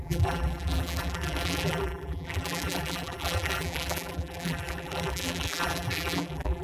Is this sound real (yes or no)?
no